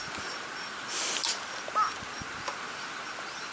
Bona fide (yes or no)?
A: yes